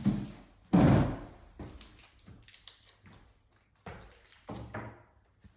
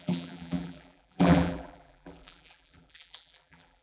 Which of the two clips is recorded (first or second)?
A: first